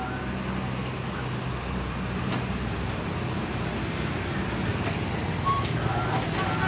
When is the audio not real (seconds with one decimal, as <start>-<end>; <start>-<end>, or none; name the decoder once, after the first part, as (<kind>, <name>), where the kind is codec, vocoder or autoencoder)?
none